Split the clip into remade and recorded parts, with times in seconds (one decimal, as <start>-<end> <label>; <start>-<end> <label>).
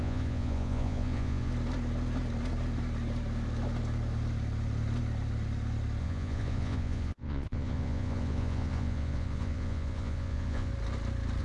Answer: 0.0-1.5 remade; 1.5-6.0 recorded; 6.0-10.7 remade; 10.7-11.4 recorded